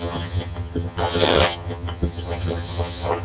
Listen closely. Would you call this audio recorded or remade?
remade